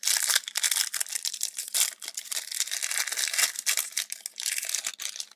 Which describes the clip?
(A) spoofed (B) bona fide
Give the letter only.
B